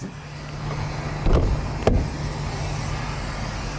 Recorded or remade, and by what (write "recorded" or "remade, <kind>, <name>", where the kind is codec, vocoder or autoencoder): recorded